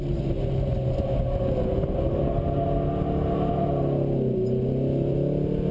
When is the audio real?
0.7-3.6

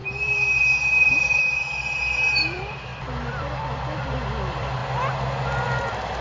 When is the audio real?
2.9-3.4; 4.8-5.8

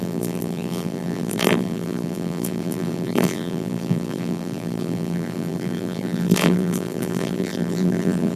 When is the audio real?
none

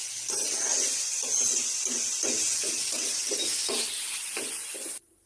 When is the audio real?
0.0-5.3

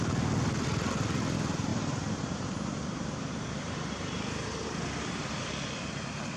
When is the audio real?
0.0-1.7; 5.5-6.4